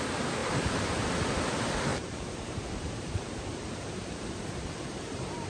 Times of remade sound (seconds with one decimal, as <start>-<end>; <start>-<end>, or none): 0.4-0.9; 1.9-5.5